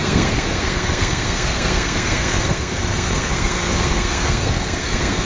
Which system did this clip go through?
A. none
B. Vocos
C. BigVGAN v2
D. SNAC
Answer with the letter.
D